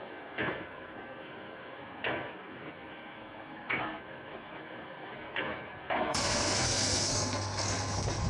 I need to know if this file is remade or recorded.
remade